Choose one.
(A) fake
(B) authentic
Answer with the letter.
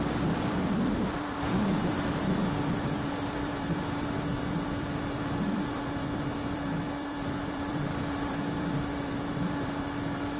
A